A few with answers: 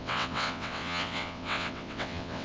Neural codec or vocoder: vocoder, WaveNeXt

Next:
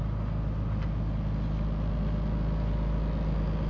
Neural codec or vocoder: none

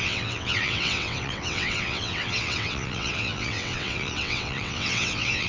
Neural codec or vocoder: vocoder, WaveNeXt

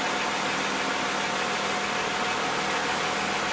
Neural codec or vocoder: none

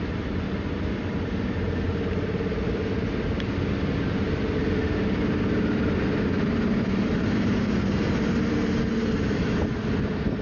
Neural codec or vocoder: none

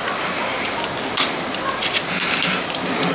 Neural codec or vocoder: none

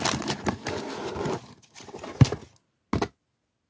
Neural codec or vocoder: none